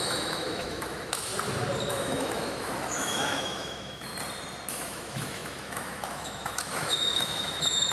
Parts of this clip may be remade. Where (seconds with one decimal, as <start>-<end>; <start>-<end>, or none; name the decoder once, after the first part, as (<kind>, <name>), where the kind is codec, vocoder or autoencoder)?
0.0-1.3 (autoencoder, DAC-VAE); 1.9-4.1; 4.7-7.9